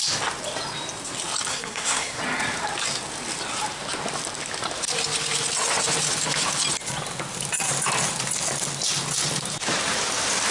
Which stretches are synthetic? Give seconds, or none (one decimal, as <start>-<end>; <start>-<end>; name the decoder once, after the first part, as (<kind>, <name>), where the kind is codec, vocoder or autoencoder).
1.5-2.2 (codec, SNAC)